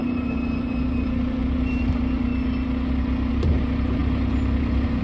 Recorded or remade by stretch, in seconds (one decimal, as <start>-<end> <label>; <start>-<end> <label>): 0.0-2.3 remade; 2.3-3.3 recorded; 3.3-4.0 remade; 4.0-5.0 recorded